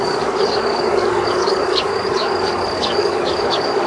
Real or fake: fake